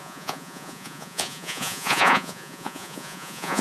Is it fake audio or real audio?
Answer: fake